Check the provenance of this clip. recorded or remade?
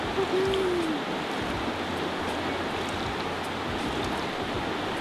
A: recorded